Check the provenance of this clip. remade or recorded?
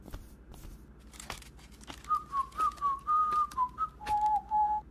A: recorded